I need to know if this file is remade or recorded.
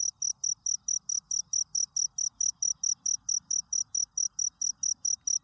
recorded